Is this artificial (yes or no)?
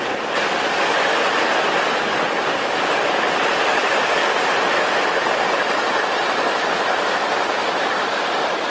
no